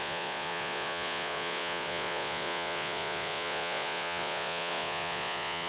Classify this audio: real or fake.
fake